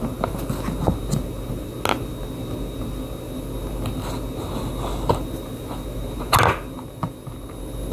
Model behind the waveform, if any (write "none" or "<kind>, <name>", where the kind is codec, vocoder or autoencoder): none